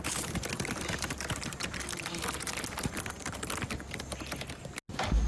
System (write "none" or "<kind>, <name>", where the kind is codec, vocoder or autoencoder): none